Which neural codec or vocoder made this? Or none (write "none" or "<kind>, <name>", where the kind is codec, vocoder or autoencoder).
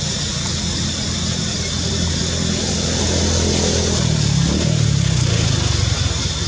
none